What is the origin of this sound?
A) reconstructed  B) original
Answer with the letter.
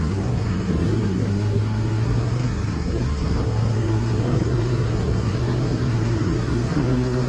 A